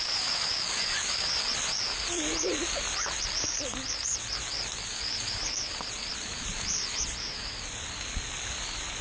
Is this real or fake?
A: real